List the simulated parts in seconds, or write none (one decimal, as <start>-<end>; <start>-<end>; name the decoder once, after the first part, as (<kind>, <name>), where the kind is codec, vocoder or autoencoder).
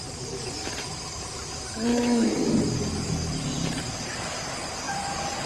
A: 1.9-2.5 (autoencoder, DAC-VAE)